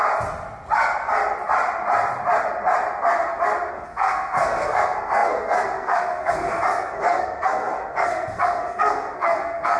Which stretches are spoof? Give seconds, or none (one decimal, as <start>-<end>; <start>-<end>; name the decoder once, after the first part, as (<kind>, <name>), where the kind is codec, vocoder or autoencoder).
3.7-9.8 (codec, SNAC)